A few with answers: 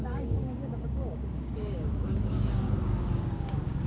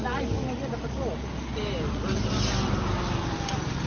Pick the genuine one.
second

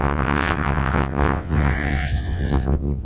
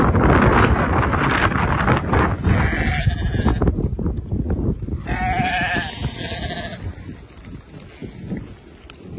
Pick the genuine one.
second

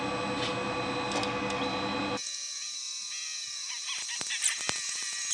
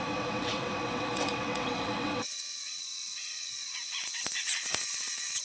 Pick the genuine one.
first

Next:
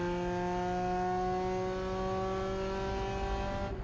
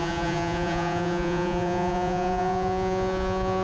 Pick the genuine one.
first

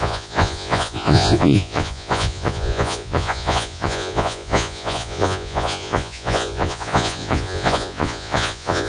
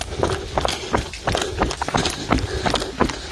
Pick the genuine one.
second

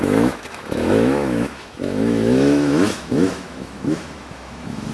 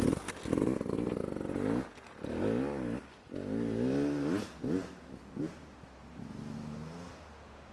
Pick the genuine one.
second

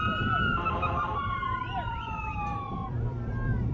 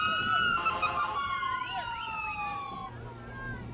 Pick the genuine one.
second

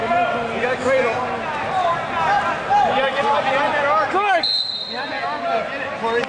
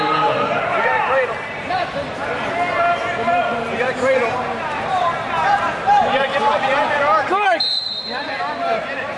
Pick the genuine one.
first